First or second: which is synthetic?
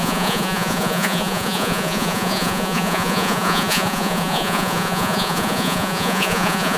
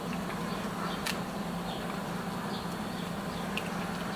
first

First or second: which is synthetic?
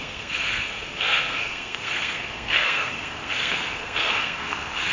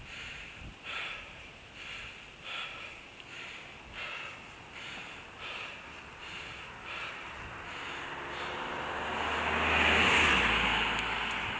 first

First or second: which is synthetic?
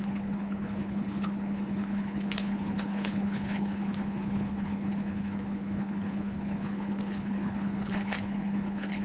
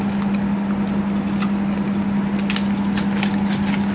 first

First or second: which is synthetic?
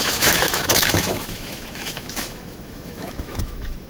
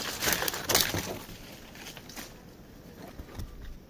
first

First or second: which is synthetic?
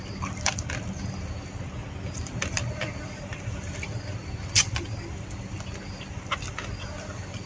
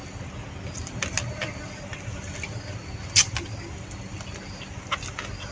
first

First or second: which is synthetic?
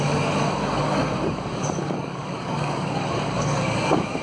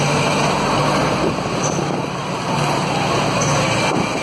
first